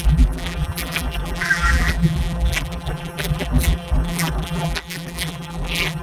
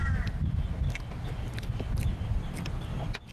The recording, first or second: second